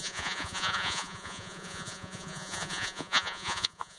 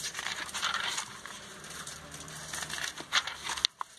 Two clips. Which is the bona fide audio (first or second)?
second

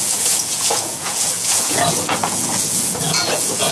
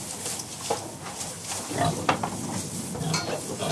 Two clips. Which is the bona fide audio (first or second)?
second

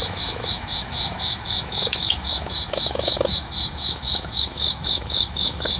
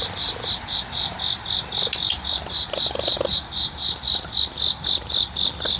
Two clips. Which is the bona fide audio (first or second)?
second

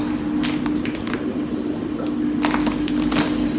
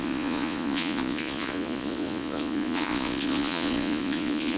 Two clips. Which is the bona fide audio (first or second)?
first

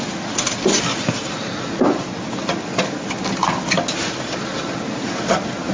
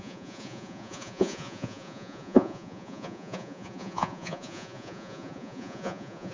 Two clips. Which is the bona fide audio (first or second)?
first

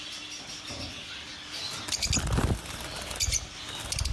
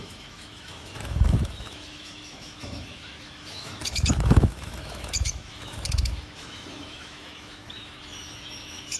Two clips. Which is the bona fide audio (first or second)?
first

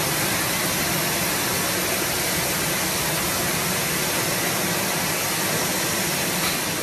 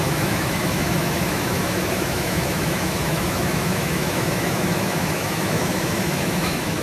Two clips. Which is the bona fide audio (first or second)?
first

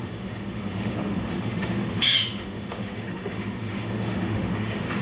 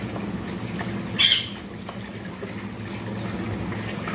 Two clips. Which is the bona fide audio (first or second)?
second